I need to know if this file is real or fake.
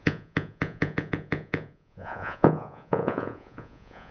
fake